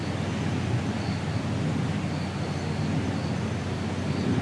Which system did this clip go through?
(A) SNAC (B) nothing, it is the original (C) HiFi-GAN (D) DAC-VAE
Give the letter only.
B